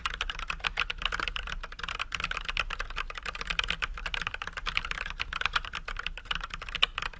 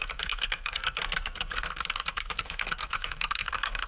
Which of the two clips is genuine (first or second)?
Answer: first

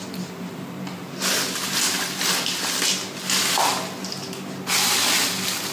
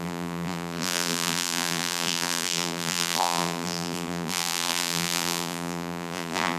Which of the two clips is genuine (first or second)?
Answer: first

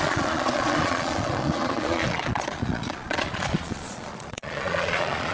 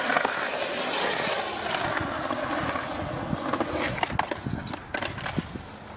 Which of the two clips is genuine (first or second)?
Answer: second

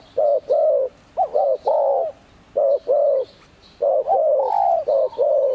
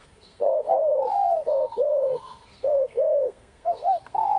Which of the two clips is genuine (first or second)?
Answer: first